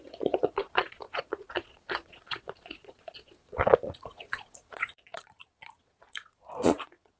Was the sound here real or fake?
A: fake